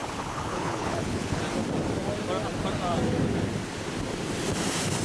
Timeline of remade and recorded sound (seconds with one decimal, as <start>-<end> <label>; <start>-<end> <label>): 0.0-1.4 remade; 1.4-5.0 recorded